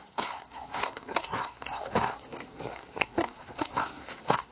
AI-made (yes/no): yes